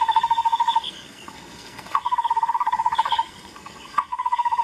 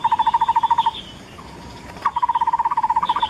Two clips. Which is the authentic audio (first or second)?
second